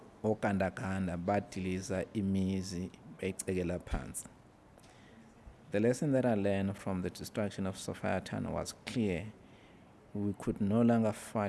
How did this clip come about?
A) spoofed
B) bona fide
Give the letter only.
B